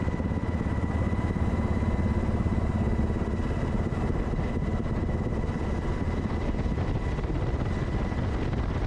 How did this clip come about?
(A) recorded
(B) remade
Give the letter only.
A